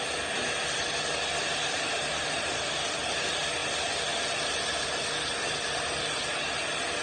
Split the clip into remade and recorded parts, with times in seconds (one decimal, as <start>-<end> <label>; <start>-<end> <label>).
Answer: 0.0-7.0 recorded

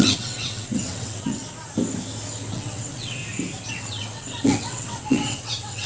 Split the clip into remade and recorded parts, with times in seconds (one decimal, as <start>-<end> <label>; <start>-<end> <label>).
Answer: 0.0-1.4 remade; 1.4-2.5 recorded; 2.5-3.2 remade; 3.2-3.7 recorded; 3.7-5.9 remade